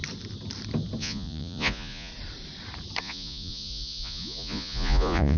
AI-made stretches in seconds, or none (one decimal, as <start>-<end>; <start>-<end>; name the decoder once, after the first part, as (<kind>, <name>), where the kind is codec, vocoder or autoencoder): 1.0-2.1 (vocoder, Vocos); 3.0-5.4